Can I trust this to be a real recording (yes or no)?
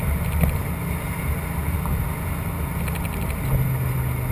yes